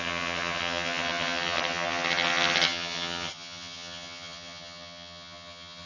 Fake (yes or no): yes